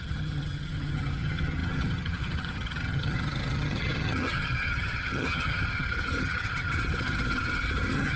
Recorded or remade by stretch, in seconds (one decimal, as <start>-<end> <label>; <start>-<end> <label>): 0.0-8.2 remade